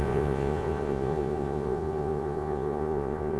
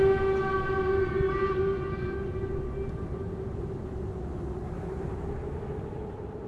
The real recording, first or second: second